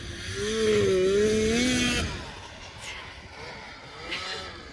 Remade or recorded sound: recorded